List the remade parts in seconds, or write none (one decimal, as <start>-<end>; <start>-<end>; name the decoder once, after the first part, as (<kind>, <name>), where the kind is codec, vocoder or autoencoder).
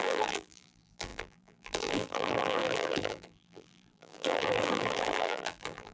0.0-5.9 (vocoder, BigVGAN v2)